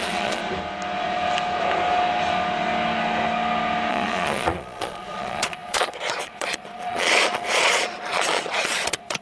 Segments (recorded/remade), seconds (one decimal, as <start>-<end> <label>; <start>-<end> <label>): 0.0-0.4 remade; 0.4-3.9 recorded; 3.9-9.2 remade